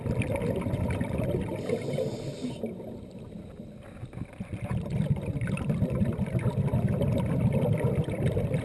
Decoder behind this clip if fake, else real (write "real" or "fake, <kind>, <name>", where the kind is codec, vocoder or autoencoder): real